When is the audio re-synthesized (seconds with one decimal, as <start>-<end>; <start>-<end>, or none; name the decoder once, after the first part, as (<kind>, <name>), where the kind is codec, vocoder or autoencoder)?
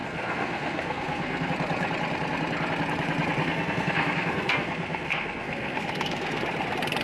0.0-1.5 (codec, SNAC); 3.4-6.4